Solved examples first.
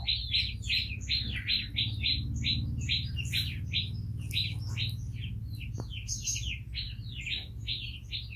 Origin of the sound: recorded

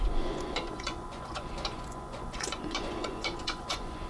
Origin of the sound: remade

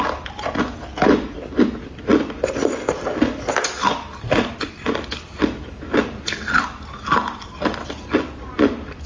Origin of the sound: recorded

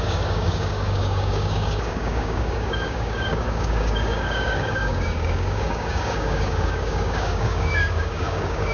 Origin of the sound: remade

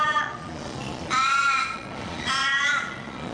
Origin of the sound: remade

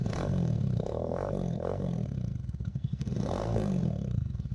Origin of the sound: remade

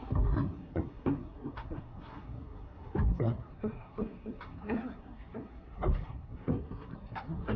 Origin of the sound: remade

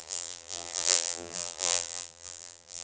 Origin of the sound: remade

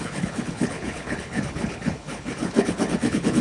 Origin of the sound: remade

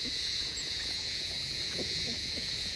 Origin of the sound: remade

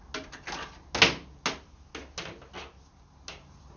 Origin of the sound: recorded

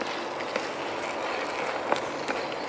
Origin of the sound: recorded